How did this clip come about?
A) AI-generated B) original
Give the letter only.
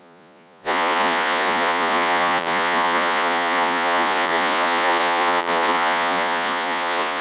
A